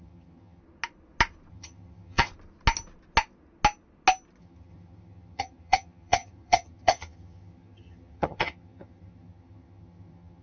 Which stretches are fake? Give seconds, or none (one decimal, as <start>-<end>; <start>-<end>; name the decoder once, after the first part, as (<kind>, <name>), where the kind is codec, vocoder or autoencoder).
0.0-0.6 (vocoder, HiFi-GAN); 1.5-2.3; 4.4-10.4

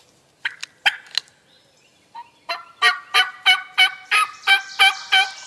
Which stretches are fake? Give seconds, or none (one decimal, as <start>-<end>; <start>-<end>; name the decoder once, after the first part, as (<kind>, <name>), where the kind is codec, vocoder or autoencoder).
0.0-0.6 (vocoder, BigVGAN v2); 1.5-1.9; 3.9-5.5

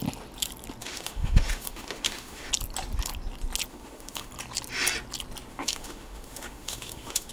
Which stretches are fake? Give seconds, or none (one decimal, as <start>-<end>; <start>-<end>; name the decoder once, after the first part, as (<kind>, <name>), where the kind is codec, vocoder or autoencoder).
0.8-2.5 (autoencoder, DAC-VAE); 3.7-4.3; 5.5-7.3